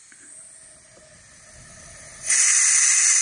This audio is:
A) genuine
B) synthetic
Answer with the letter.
A